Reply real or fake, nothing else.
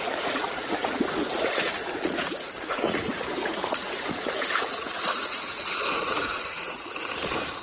fake